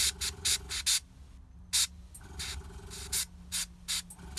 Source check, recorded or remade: recorded